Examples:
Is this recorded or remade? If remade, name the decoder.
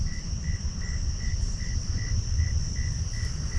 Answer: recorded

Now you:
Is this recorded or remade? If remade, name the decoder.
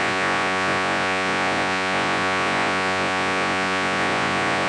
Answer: remade, vocoder, Vocos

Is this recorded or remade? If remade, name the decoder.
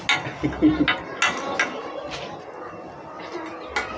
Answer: recorded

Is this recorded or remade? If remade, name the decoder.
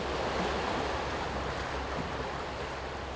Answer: recorded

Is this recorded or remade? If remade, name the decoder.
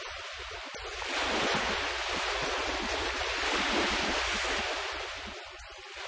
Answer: recorded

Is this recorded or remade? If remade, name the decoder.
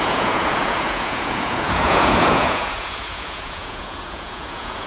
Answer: remade, vocoder, Vocos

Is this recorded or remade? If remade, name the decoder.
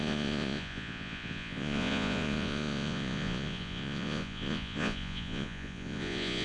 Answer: remade, vocoder, Vocos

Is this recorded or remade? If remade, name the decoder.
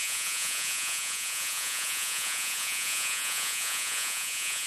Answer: remade, vocoder, Vocos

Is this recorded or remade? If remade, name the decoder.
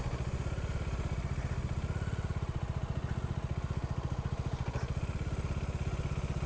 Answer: recorded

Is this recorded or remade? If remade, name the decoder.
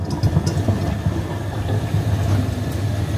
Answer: recorded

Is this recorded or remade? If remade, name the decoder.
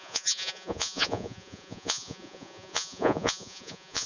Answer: remade, vocoder, Vocos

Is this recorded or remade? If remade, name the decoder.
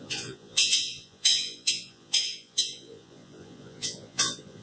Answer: remade, vocoder, Vocos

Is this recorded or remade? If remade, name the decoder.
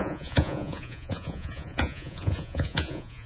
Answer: remade, vocoder, Vocos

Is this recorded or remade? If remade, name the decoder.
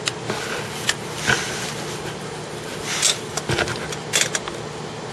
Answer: recorded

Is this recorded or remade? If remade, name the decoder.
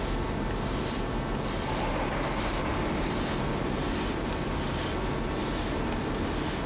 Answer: recorded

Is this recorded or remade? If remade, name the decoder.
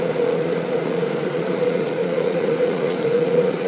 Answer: remade, vocoder, Vocos